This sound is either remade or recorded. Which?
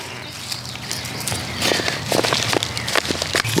recorded